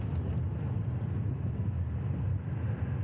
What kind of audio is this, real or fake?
real